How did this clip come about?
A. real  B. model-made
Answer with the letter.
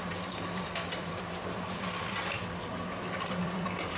B